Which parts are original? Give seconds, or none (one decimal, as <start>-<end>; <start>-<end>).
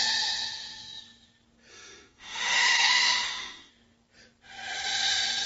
0.0-1.7; 3.7-5.5